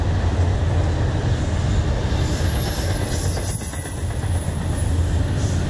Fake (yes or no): no